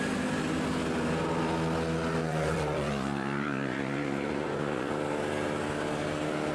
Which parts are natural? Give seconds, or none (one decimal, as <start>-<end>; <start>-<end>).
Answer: 0.0-2.2; 4.9-6.5